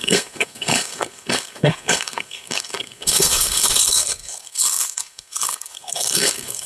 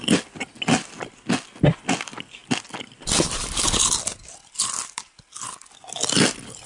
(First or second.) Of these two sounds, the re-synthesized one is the first